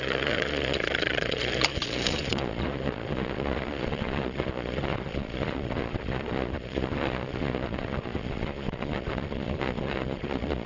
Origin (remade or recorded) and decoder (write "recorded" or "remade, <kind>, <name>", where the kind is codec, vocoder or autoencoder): remade, vocoder, Vocos